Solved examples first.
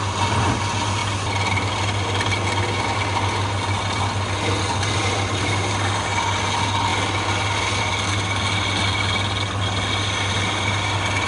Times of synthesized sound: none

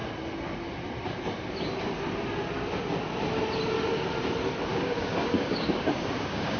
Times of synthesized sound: 4.7-6.6 (codec, DAC)